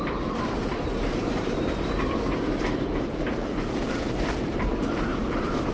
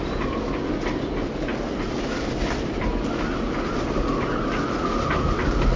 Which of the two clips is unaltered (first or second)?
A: second